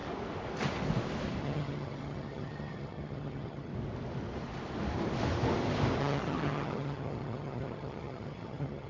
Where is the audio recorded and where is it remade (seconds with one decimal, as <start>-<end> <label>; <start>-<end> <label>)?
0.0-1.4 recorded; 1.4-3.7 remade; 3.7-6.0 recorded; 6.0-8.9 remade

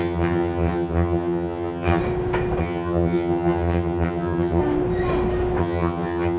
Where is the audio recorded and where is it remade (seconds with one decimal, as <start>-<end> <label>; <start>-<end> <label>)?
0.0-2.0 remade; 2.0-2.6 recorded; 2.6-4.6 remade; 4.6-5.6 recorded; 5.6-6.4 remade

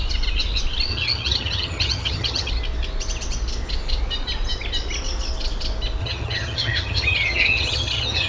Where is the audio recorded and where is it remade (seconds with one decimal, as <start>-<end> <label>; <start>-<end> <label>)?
0.0-0.9 recorded; 0.9-2.5 remade; 2.5-6.0 recorded; 6.0-8.3 remade

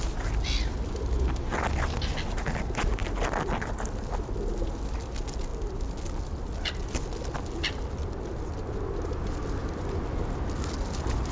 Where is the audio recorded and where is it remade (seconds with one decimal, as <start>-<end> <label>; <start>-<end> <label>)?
0.0-11.3 recorded

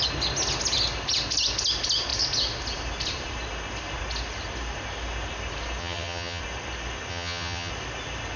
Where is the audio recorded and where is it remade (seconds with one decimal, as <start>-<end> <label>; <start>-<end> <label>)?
0.0-5.8 recorded; 5.8-6.4 remade; 6.4-7.1 recorded; 7.1-7.7 remade; 7.7-8.4 recorded

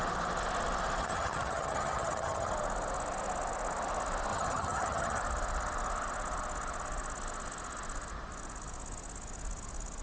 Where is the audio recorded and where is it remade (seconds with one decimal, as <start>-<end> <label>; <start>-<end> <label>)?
0.0-1.0 recorded; 1.0-2.5 remade; 2.5-4.3 recorded; 4.3-5.2 remade; 5.2-10.0 recorded

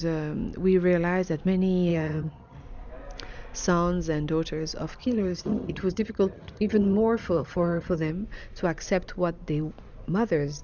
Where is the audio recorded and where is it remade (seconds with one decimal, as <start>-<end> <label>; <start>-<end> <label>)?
0.0-1.9 recorded; 1.9-2.6 remade; 2.6-5.0 recorded; 5.0-8.1 remade; 8.1-10.6 recorded